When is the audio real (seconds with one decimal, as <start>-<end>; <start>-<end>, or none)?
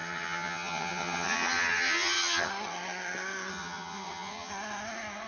2.5-3.5; 4.5-5.3